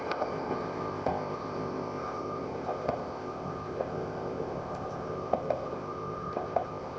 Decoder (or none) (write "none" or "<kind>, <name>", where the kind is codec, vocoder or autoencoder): codec, ZipCodec